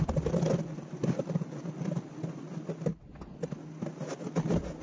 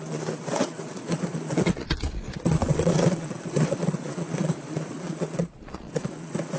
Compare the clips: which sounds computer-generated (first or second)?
second